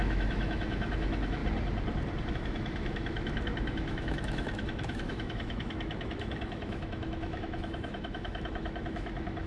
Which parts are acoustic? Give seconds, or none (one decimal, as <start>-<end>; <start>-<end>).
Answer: 1.4-2.3